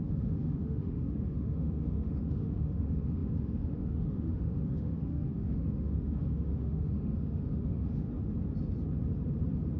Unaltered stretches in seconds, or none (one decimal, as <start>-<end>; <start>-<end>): 8.1-9.8